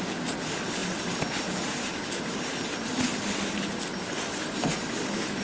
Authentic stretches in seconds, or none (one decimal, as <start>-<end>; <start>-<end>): 0.0-5.4